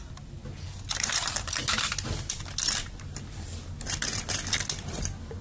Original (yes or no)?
yes